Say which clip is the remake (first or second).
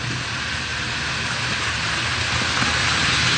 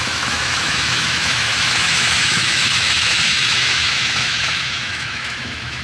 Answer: second